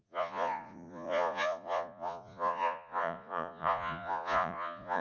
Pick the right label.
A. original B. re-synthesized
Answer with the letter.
B